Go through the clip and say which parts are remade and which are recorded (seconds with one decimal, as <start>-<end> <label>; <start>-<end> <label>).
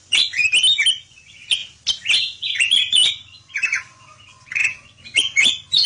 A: 0.0-0.4 remade; 0.4-1.0 recorded; 1.0-1.6 remade; 1.6-2.2 recorded; 2.2-5.9 remade